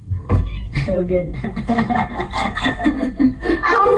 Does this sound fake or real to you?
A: fake